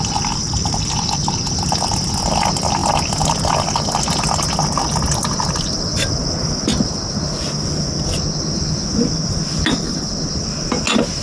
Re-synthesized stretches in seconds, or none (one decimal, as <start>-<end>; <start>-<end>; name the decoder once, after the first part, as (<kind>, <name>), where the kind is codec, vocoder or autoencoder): none